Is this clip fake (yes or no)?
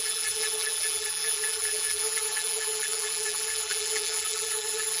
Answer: yes